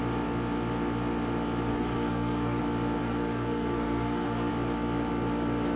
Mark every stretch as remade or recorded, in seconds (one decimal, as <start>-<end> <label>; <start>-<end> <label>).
0.0-1.7 recorded; 1.7-2.6 remade; 2.6-3.0 recorded; 3.0-4.5 remade; 4.5-5.8 recorded